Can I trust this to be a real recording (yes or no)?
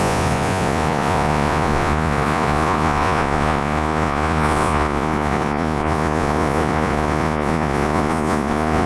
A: no